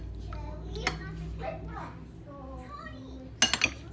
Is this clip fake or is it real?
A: real